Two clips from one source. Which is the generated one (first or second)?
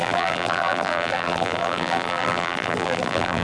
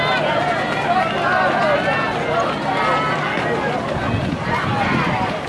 first